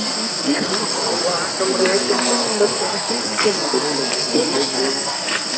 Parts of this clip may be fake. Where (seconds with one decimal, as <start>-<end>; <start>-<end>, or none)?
0.0-0.7; 1.8-5.6